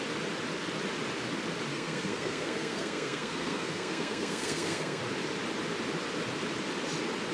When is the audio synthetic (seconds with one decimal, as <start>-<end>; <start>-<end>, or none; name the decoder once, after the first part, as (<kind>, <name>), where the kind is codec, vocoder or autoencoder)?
1.7-5.0 (codec, SNAC)